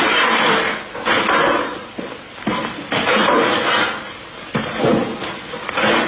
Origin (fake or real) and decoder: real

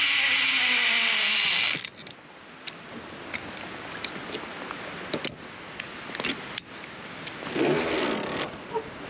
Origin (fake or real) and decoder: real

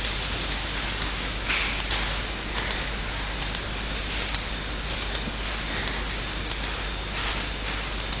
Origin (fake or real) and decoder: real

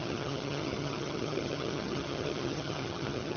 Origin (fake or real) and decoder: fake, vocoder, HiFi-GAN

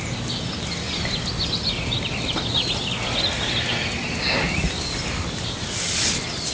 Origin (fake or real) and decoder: real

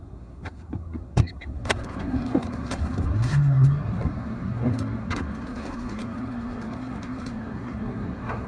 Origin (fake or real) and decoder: fake, codec, SNAC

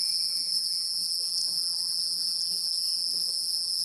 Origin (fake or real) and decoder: fake, vocoder, BigVGAN v2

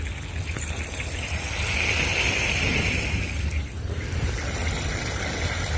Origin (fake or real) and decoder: real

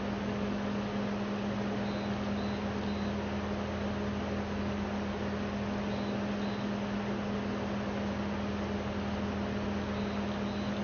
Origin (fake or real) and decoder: real